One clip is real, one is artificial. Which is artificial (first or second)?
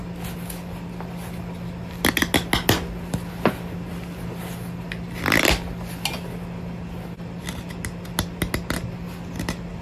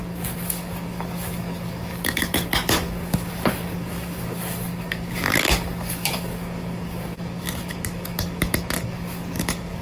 second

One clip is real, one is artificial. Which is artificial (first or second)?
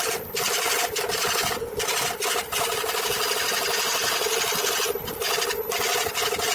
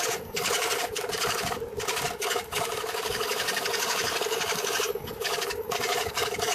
second